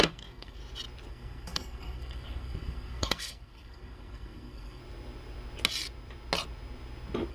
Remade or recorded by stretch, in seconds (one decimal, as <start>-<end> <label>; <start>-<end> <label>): 0.0-0.6 remade; 0.6-1.1 recorded; 1.1-4.8 remade; 4.8-7.3 recorded